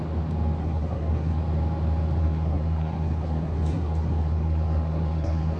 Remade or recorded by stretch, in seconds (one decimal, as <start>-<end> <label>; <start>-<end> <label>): 0.0-0.6 recorded; 0.6-1.4 remade; 1.4-2.2 recorded; 2.2-5.6 remade